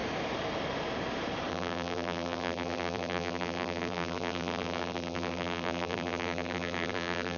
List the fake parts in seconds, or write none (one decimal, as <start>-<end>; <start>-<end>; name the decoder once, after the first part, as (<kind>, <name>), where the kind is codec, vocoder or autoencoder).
1.5-7.4 (vocoder, BigVGAN v2)